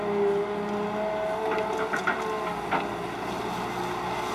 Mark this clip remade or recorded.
recorded